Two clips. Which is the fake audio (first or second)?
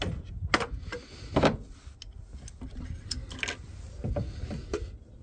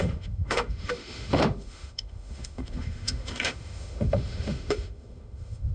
second